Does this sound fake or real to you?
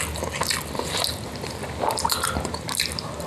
real